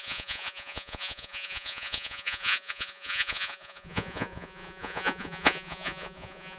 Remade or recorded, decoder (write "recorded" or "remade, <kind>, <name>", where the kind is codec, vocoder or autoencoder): remade, vocoder, Vocos